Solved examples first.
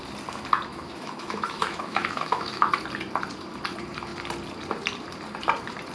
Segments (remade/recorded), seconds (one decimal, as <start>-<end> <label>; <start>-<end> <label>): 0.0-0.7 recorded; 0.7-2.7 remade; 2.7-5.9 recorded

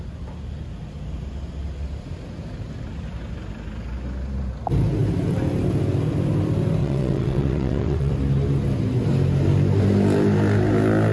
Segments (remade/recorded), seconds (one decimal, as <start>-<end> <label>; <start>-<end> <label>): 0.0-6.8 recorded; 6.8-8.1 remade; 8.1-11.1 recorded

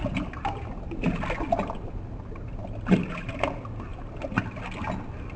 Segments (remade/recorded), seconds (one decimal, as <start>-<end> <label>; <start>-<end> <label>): 0.0-5.4 recorded

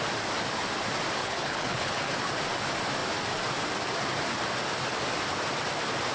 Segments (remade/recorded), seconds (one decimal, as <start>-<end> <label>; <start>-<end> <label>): 0.0-1.2 recorded; 1.2-2.1 remade; 2.1-6.1 recorded